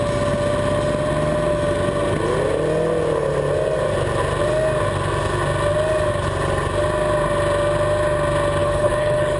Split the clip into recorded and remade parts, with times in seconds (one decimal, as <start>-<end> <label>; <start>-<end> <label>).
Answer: 0.0-8.6 recorded; 8.6-9.4 remade